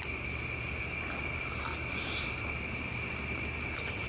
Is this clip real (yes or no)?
yes